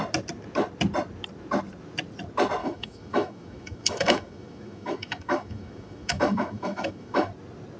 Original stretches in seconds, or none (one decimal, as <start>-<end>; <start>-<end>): 0.0-2.6; 7.3-7.8